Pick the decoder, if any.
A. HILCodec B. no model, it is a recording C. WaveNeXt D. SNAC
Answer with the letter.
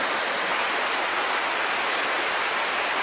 B